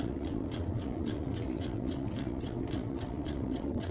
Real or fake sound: fake